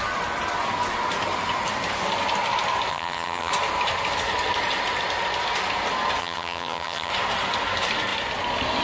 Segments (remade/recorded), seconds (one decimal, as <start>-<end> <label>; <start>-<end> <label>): 0.0-2.9 recorded; 2.9-3.5 remade; 3.5-6.2 recorded; 6.2-7.1 remade; 7.1-8.8 recorded

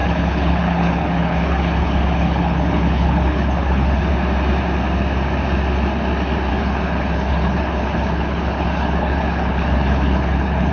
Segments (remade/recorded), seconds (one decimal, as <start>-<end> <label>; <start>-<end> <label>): 0.0-4.1 remade; 4.1-6.5 recorded; 6.5-10.7 remade

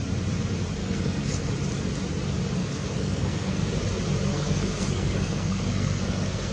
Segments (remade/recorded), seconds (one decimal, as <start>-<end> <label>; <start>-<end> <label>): 0.0-0.8 recorded; 0.8-1.5 remade; 1.5-2.6 recorded; 2.6-3.7 remade; 3.7-4.3 recorded; 4.3-6.5 remade

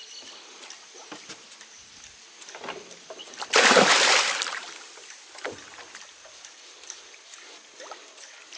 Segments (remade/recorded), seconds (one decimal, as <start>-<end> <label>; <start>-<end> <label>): 0.0-4.6 remade; 4.6-5.8 recorded; 5.8-8.6 remade

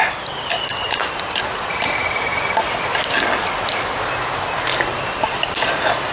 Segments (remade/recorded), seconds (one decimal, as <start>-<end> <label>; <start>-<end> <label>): 0.0-6.1 recorded

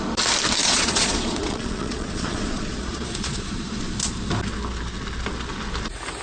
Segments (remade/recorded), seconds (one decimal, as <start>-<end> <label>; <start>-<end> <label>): 0.0-0.6 recorded; 0.6-3.8 remade; 3.8-6.2 recorded

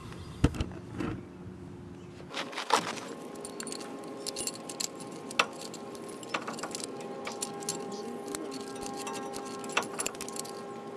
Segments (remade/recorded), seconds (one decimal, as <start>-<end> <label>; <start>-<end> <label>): 0.0-11.0 recorded